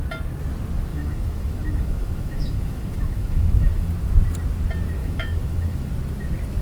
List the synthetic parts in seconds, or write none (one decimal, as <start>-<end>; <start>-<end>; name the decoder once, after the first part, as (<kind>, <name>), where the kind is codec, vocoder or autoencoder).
0.9-3.9 (autoencoder, DAC-VAE); 5.0-5.9